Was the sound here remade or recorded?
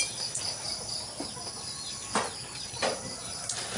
recorded